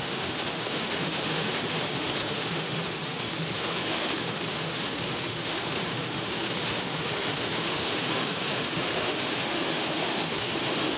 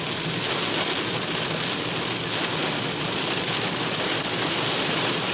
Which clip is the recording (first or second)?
second